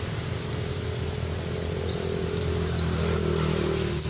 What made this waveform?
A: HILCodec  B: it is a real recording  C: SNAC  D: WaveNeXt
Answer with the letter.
B